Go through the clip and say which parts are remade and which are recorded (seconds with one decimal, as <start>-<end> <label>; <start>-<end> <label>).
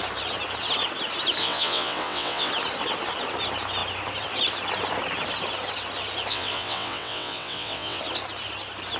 0.0-1.4 recorded; 1.4-2.5 remade; 2.5-6.3 recorded; 6.3-8.0 remade; 8.0-9.0 recorded